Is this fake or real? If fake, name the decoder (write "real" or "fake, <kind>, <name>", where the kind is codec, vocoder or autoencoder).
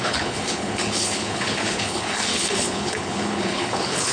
fake, codec, HILCodec